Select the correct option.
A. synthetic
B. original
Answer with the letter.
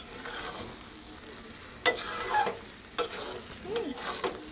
B